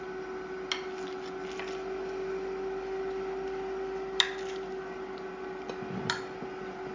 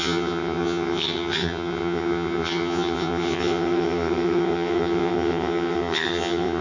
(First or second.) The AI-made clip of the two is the second